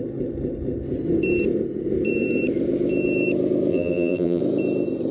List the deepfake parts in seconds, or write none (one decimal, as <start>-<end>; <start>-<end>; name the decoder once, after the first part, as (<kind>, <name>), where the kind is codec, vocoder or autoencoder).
3.7-4.4 (vocoder, BigVGAN v2)